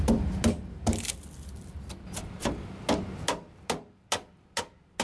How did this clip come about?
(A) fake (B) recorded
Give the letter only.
B